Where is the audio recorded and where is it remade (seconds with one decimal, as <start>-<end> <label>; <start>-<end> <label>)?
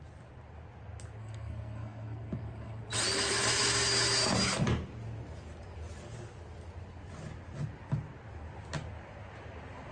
0.0-1.2 recorded; 1.2-2.8 remade; 2.8-9.9 recorded